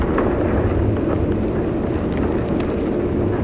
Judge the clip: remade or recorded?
recorded